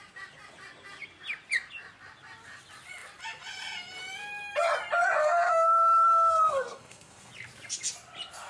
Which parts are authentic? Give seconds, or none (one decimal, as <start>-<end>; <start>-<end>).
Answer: 0.0-5.2; 7.3-8.5